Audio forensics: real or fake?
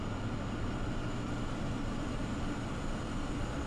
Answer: real